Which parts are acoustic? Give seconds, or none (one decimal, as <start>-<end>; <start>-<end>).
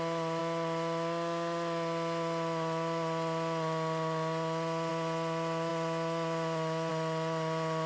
0.0-7.9